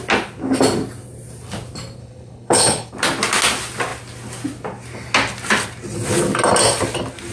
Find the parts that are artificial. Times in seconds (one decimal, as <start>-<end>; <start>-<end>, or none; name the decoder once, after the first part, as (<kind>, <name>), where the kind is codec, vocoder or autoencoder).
2.0-2.9 (codec, HILCodec)